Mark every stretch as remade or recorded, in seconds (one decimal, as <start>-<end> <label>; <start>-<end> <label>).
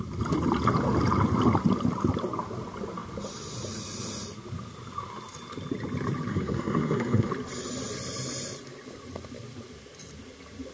0.0-6.3 recorded; 6.3-7.3 remade; 7.3-10.7 recorded